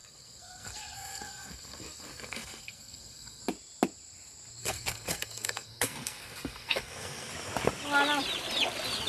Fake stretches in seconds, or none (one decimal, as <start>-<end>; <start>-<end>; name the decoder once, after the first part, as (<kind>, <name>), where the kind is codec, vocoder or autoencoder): 0.0-3.4 (codec, SNAC); 4.6-7.3